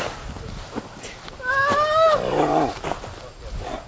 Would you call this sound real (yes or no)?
yes